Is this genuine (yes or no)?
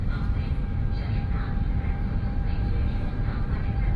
no